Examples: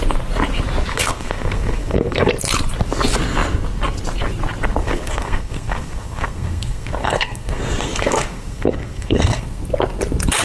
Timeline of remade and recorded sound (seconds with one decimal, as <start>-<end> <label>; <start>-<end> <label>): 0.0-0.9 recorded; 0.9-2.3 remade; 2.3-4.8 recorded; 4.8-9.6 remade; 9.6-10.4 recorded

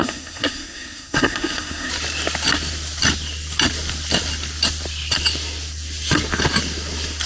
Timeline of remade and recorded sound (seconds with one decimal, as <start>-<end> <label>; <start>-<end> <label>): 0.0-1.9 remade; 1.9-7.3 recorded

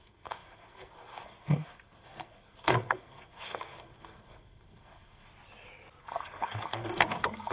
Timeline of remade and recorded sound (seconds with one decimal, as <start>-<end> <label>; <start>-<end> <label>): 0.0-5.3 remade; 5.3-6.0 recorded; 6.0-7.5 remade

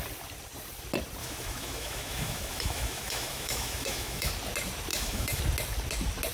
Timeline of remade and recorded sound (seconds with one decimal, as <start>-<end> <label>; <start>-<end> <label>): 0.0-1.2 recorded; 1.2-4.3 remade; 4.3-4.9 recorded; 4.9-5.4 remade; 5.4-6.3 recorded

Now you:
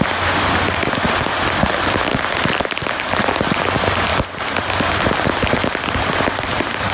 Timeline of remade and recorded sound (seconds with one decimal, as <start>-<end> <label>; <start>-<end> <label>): 0.0-6.9 recorded

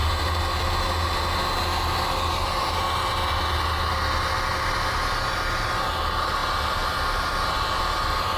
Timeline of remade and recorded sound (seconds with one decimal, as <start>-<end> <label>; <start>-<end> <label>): 0.0-8.4 recorded